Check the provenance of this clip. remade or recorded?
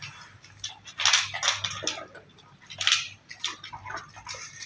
recorded